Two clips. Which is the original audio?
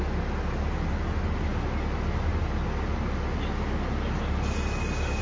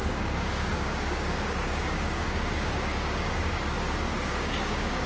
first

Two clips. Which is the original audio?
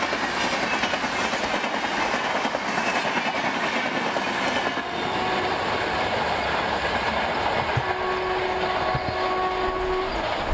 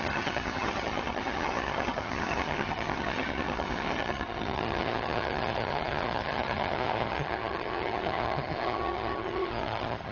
first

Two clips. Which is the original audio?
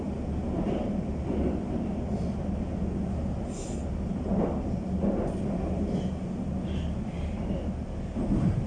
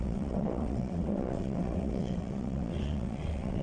first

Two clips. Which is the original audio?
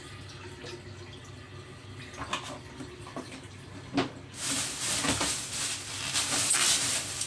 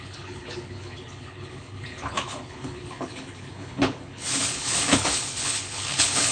first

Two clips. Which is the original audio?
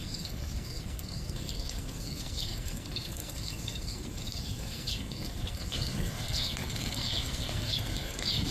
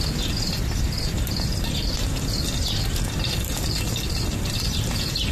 second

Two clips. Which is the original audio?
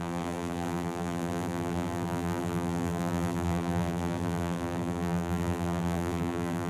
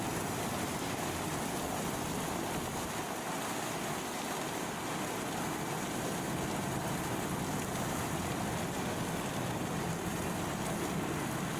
second